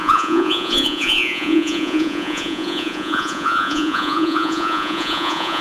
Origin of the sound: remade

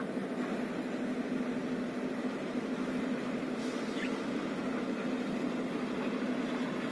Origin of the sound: recorded